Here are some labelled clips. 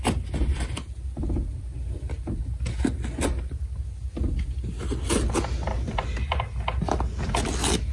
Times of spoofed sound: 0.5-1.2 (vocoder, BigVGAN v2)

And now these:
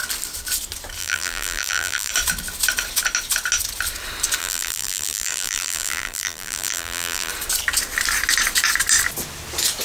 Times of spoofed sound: 1.0-2.1 (vocoder, BigVGAN v2); 4.4-7.3

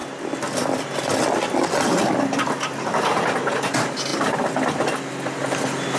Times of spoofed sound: 4.1-5.4 (vocoder, BigVGAN v2)

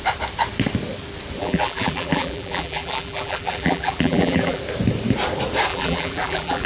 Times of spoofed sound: 1.4-4.6 (vocoder, BigVGAN v2); 5.7-6.7

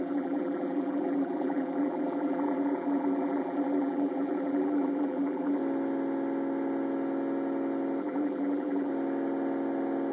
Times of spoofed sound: 0.0-5.6 (vocoder, BigVGAN v2); 8.0-8.9